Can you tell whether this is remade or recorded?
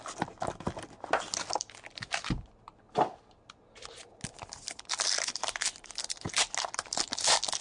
recorded